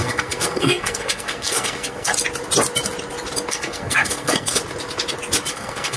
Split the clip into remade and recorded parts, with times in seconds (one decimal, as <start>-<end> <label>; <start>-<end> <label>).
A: 0.0-2.1 remade; 2.1-3.5 recorded; 3.5-4.6 remade; 4.6-5.5 recorded; 5.5-6.0 remade